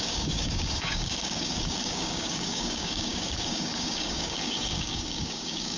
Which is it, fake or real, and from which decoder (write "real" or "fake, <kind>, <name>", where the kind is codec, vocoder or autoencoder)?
fake, codec, DAC